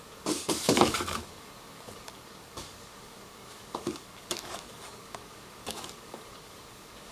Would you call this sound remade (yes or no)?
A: yes